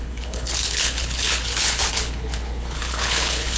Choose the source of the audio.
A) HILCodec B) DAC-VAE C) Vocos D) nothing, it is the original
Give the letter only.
A